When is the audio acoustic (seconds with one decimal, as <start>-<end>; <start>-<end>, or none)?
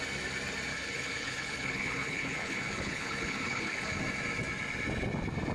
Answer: 0.0-0.7; 4.0-5.5